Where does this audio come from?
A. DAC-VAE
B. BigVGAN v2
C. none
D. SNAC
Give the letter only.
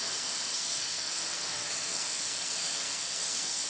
D